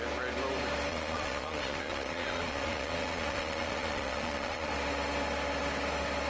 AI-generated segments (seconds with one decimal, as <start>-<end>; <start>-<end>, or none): 0.9-4.7